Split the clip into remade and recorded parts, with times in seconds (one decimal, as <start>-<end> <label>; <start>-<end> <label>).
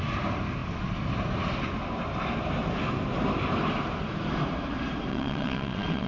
0.0-5.1 recorded; 5.1-6.1 remade